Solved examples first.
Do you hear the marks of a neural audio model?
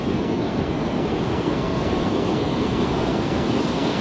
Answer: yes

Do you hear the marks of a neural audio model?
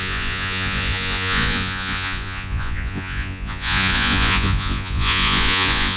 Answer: yes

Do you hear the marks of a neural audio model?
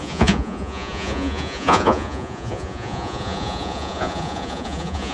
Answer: yes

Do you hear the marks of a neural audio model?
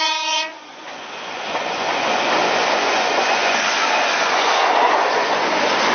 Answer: yes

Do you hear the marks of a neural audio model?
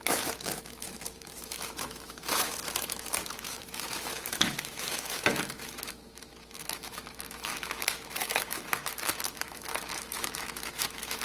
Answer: yes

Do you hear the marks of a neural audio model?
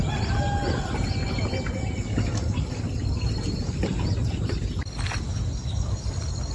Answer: no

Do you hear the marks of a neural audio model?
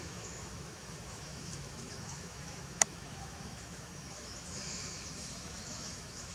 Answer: yes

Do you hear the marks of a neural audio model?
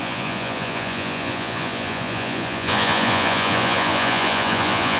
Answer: yes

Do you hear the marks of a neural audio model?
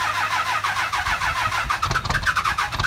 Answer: yes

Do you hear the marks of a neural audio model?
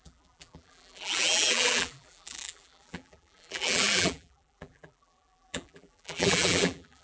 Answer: yes